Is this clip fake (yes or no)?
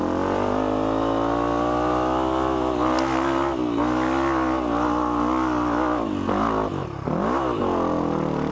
no